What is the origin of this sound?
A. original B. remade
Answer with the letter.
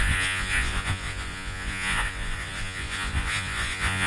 B